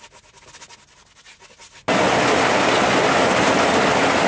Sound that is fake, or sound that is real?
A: real